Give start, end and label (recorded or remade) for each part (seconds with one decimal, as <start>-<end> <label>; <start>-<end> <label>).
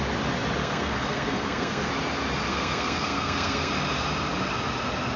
0.0-0.6 recorded; 0.6-1.9 remade; 1.9-2.5 recorded; 2.5-3.7 remade; 3.7-5.2 recorded